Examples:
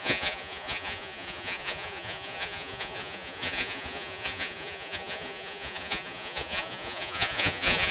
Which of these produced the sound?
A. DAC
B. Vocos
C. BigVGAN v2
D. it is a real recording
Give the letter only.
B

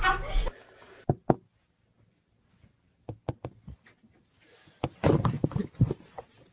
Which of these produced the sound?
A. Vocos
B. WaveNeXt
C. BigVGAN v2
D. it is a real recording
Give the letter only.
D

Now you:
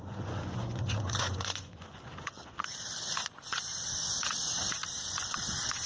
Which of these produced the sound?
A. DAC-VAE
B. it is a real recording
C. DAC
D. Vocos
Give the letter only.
D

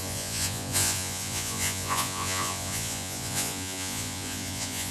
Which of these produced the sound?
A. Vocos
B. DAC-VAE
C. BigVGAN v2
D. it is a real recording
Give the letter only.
A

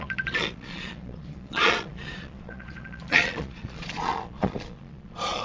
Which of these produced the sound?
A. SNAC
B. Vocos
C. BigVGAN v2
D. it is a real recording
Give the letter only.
B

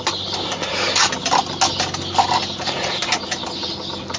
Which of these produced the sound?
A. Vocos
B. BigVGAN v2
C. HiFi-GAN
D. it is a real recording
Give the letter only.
D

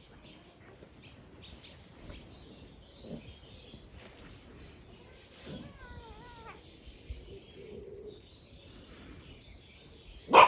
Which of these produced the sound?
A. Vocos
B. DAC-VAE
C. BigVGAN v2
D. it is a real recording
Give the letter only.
D